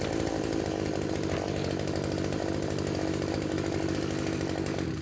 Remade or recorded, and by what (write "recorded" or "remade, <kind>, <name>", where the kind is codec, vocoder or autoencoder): recorded